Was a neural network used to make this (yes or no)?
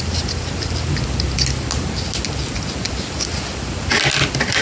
no